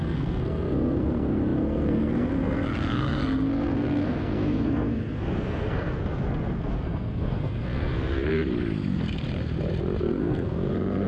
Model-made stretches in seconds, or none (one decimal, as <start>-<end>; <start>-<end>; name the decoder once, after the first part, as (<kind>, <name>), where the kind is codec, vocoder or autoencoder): 0.0-8.3 (codec, SNAC); 10.0-11.1